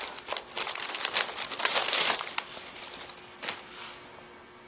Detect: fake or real real